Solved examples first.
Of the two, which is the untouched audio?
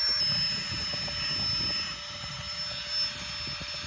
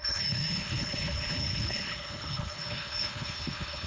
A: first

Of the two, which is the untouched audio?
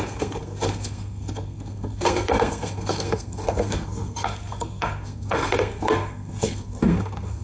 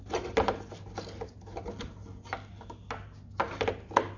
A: second